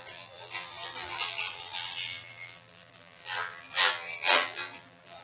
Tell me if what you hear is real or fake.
fake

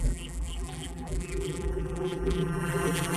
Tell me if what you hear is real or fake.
fake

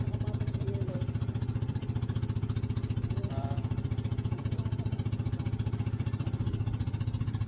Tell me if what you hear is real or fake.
fake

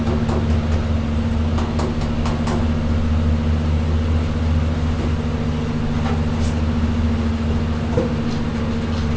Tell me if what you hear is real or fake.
real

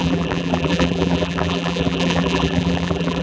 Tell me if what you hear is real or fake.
fake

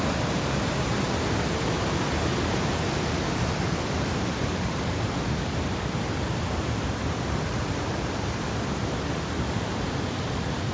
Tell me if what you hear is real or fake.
fake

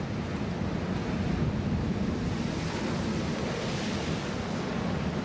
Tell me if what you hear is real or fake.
real